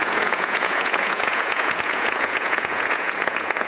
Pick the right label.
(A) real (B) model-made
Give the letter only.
B